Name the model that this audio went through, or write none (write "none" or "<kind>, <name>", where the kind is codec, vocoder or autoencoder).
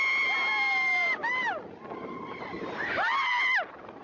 none